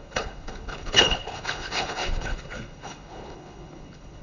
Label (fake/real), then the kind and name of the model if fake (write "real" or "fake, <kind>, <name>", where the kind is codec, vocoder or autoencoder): fake, codec, HILCodec